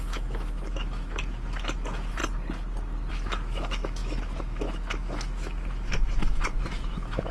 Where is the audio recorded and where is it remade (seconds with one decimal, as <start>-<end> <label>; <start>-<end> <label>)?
0.0-2.2 remade; 2.2-3.1 recorded; 3.1-7.3 remade